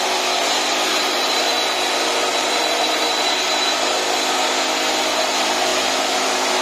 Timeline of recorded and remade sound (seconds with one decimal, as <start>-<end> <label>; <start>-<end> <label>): 0.0-0.9 recorded; 0.9-1.4 remade; 1.4-2.3 recorded; 2.3-3.5 remade; 3.5-6.6 recorded